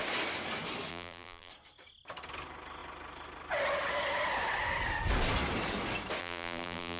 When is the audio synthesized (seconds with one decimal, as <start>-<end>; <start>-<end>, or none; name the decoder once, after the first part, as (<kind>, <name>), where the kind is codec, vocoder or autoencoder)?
0.9-1.5 (vocoder, BigVGAN v2); 6.2-7.0